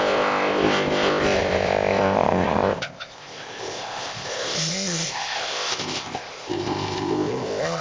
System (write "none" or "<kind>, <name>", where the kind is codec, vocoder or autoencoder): codec, ZipCodec